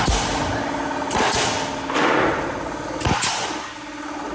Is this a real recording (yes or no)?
yes